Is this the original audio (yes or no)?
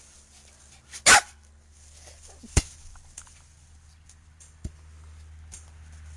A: yes